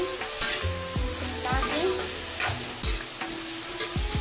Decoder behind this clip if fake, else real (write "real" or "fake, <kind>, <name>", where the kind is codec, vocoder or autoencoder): real